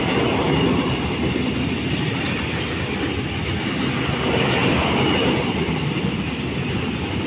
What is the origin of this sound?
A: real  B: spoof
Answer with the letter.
A